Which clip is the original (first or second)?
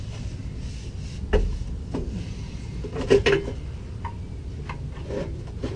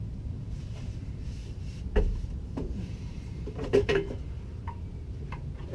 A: first